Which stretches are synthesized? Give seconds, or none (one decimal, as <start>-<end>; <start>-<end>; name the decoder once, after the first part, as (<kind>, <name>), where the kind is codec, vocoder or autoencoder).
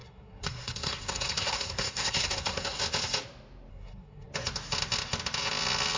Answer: 0.0-2.8 (codec, SNAC); 3.7-4.3